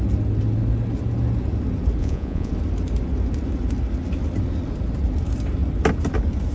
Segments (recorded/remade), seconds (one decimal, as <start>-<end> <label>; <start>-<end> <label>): 0.0-2.0 recorded; 2.0-2.5 remade; 2.5-6.5 recorded